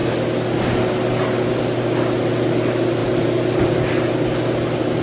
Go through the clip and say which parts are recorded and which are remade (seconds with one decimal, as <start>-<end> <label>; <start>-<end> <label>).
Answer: 0.0-5.0 recorded